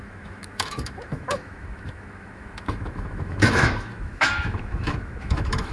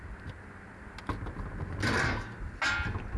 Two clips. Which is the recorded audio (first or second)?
second